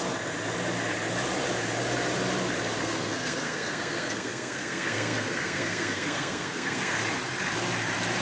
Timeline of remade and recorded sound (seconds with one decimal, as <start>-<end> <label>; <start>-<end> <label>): 0.0-2.8 recorded; 2.8-7.0 remade; 7.0-8.2 recorded